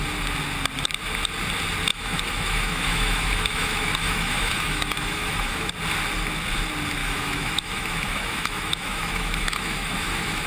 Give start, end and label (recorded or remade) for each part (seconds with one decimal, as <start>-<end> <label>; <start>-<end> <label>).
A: 0.0-1.9 recorded; 1.9-5.7 remade; 5.7-7.0 recorded; 7.0-10.5 remade

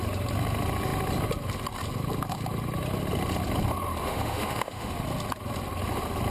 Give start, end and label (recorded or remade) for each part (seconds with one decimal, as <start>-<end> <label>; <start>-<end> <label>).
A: 0.0-4.0 recorded; 4.0-4.9 remade; 4.9-6.3 recorded

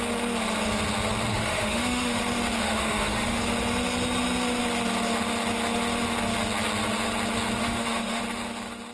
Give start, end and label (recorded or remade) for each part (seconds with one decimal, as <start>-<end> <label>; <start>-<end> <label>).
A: 0.0-1.3 recorded; 1.3-2.2 remade; 2.2-2.6 recorded; 2.6-3.4 remade; 3.4-7.6 recorded; 7.6-8.2 remade; 8.2-8.9 recorded

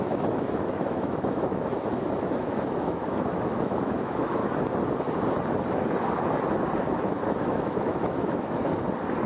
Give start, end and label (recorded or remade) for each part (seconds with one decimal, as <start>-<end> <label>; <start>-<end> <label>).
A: 0.0-4.4 remade; 4.4-7.4 recorded; 7.4-8.6 remade; 8.6-9.3 recorded

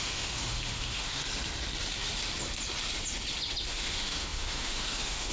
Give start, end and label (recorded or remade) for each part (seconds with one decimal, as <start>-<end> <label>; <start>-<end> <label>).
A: 0.0-1.2 remade; 1.2-3.7 recorded; 3.7-5.3 remade

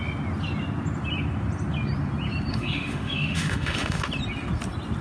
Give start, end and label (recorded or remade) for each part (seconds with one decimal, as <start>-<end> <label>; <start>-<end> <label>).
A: 0.0-2.5 recorded; 2.5-4.0 remade; 4.0-5.0 recorded